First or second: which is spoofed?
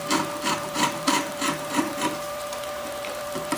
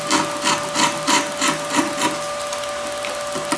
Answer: first